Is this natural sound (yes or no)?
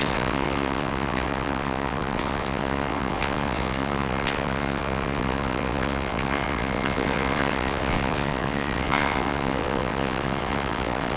no